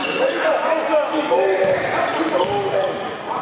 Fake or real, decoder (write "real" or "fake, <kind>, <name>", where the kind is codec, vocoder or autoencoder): real